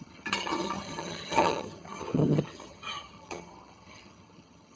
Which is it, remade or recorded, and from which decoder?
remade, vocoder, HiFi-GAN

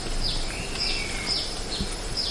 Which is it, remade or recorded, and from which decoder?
recorded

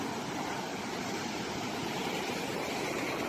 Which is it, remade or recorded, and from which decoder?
recorded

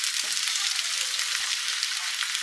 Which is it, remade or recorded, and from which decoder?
recorded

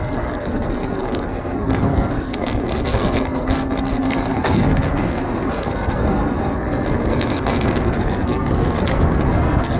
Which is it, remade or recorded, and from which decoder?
remade, codec, SNAC